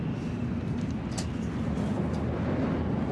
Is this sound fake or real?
real